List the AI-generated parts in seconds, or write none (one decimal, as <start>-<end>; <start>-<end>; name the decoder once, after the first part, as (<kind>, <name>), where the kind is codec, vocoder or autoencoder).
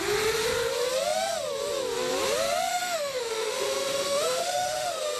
2.7-5.2 (autoencoder, DAC-VAE)